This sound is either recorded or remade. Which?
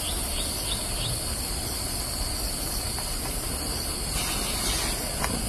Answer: recorded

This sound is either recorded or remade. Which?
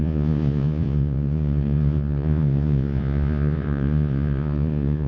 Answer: remade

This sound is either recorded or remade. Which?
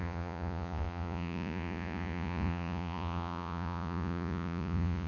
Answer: remade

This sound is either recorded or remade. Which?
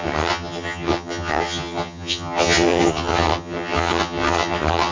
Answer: remade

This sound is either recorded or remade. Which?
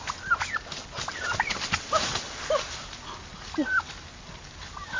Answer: recorded